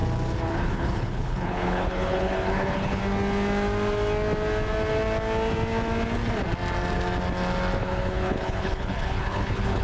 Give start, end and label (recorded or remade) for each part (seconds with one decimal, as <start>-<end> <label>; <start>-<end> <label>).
0.0-0.5 recorded; 0.5-3.0 remade; 3.0-7.8 recorded; 7.8-9.8 remade